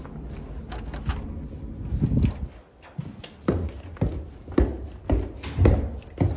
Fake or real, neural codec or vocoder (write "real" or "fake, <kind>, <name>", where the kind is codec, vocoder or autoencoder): real